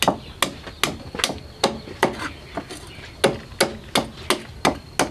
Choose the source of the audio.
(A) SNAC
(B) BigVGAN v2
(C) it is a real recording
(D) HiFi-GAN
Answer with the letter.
C